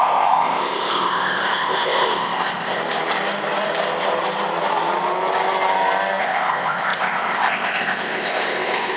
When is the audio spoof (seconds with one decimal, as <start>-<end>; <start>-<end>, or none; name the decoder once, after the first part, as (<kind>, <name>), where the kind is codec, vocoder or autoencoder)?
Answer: 0.0-2.8 (codec, ZipCodec); 6.2-9.0